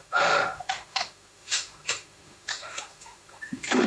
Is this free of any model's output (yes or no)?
no